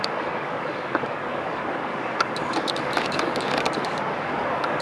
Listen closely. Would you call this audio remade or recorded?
remade